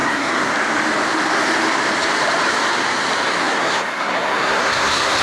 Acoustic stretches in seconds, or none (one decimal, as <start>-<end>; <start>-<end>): 0.5-3.4

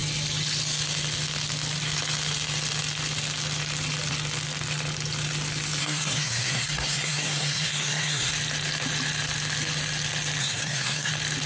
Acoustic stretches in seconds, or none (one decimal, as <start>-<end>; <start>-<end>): 0.0-5.8; 8.3-10.4; 11.1-11.5

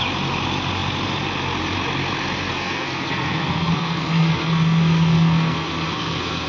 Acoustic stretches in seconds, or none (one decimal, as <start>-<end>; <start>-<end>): 0.0-2.5

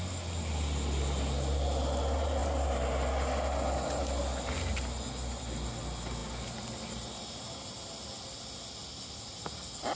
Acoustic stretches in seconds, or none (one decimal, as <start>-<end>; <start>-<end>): 0.0-10.0